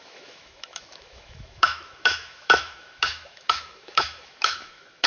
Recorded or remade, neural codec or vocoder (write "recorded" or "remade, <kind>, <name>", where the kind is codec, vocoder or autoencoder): remade, autoencoder, DAC-VAE